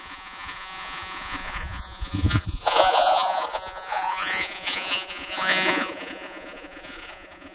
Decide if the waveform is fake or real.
fake